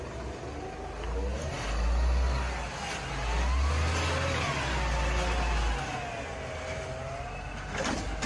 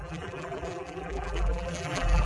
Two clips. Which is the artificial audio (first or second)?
second